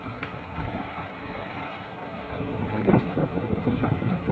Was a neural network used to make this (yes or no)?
yes